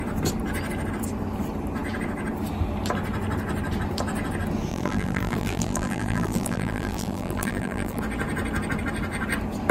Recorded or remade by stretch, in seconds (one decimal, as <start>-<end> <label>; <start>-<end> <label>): 0.0-4.7 recorded; 4.7-8.0 remade; 8.0-9.7 recorded